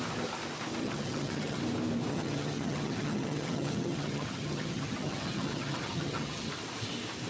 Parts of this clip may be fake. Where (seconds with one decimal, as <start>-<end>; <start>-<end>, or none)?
0.8-1.6; 2.1-6.5